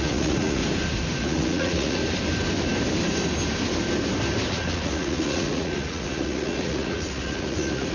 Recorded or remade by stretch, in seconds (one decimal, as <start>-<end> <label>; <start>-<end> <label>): 0.0-0.6 remade; 0.6-1.2 recorded; 1.2-2.0 remade; 2.0-4.5 recorded; 4.5-7.9 remade